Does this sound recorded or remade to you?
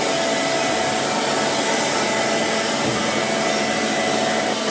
recorded